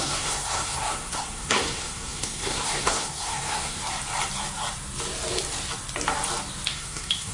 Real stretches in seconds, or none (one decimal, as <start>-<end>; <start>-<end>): 3.8-6.7